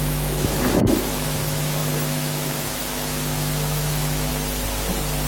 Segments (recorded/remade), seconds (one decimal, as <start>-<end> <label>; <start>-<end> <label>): 0.0-4.3 remade; 4.3-5.3 recorded